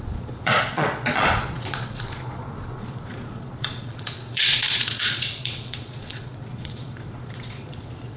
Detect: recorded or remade remade